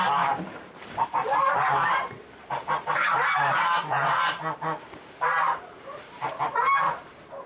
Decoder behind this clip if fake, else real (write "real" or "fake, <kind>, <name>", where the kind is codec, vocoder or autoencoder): fake, vocoder, BigVGAN v2